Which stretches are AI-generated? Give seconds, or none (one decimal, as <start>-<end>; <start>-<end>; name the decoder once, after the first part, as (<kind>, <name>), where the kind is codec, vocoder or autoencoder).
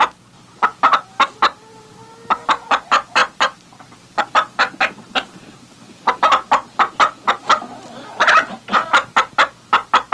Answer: none